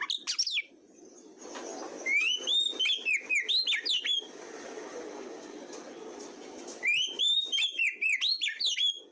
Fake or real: real